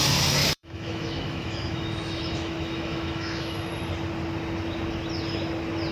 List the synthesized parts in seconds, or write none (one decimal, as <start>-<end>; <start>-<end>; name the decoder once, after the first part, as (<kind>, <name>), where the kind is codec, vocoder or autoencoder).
0.4-3.7 (autoencoder, DAC-VAE)